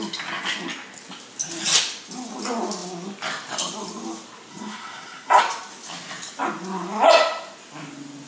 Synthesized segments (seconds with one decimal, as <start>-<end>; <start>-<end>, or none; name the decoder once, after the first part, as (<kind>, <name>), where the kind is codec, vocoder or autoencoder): 4.5-5.4 (codec, SNAC)